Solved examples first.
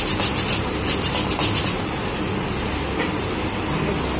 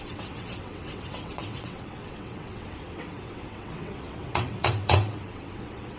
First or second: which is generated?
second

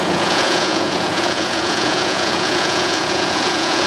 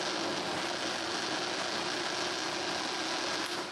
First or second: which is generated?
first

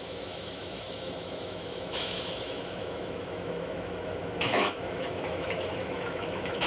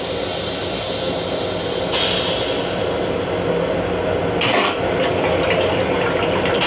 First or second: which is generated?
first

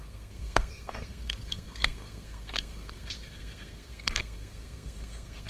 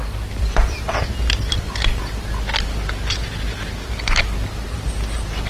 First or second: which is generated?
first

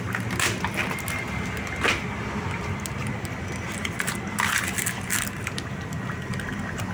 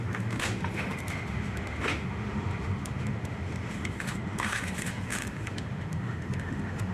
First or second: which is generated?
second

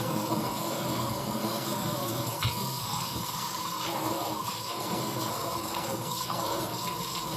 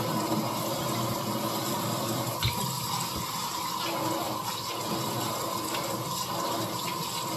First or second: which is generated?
first